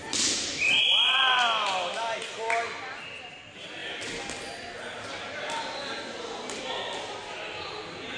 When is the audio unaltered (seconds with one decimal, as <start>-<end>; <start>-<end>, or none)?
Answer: 0.0-8.2